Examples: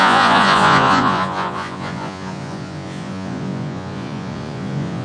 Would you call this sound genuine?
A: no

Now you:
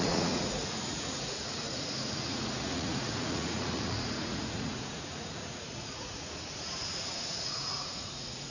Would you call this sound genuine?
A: no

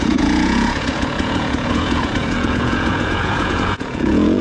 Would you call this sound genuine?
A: no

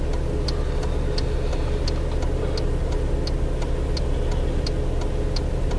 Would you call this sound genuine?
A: yes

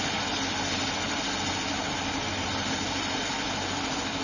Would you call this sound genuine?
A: yes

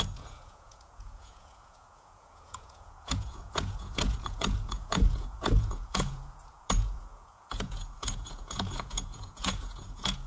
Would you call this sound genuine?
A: no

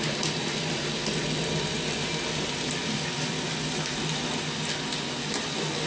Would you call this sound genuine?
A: yes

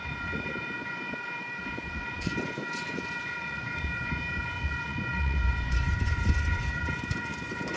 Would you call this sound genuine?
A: no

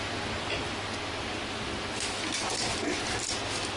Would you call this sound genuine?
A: yes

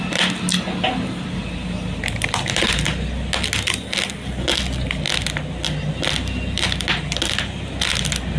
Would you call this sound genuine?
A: yes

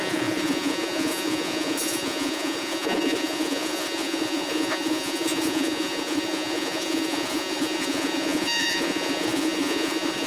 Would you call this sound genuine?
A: no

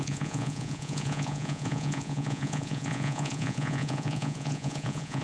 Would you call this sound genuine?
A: no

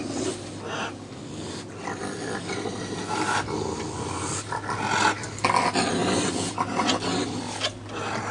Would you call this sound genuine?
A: yes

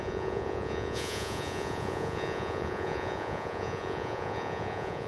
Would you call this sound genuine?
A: no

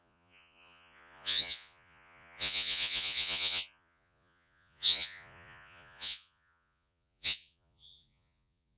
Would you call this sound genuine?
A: no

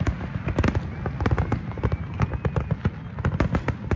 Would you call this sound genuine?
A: yes